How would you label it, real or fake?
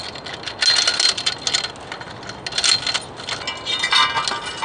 real